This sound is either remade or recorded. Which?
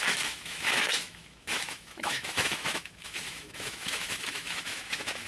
remade